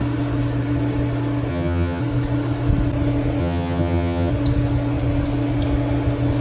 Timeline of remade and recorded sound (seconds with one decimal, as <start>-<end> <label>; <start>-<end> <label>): 0.0-1.5 recorded; 1.5-2.0 remade; 2.0-3.4 recorded; 3.4-4.3 remade; 4.3-6.4 recorded